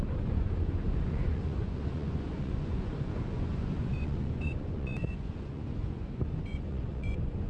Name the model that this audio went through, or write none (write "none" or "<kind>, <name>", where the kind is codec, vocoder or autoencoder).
vocoder, Vocos